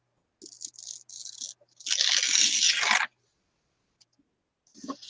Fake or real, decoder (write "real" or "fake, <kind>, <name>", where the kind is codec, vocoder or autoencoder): real